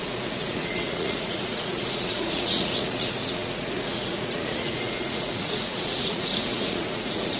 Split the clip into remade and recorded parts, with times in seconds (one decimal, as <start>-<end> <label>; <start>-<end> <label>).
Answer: 0.0-7.4 remade